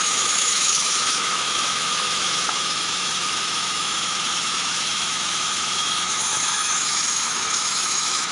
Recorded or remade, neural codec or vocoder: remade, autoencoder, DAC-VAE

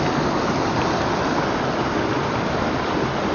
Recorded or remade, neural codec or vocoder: recorded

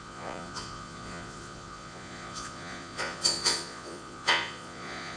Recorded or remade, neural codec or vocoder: remade, vocoder, Vocos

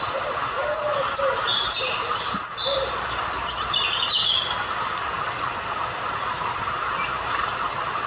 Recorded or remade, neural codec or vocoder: recorded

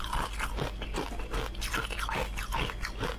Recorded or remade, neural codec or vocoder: recorded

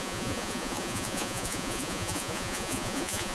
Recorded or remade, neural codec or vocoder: remade, vocoder, Vocos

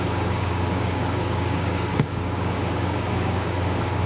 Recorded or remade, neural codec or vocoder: remade, codec, DAC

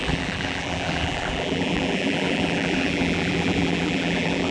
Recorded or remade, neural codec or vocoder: remade, vocoder, BigVGAN v2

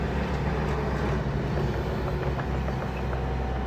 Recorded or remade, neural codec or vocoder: recorded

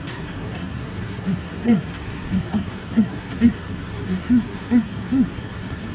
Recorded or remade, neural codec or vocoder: remade, codec, SNAC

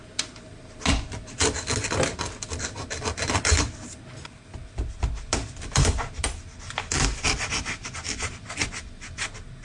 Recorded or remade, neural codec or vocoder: recorded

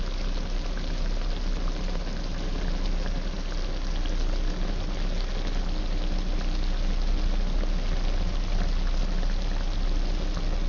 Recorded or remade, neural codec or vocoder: recorded